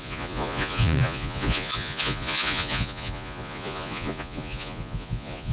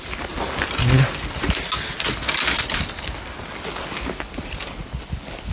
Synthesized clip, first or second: first